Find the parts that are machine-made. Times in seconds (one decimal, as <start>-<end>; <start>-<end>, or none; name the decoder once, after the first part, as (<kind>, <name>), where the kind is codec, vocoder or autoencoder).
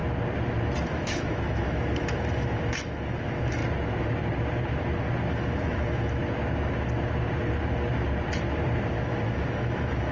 0.8-3.6 (autoencoder, DAC-VAE); 5.3-6.2; 8.9-10.1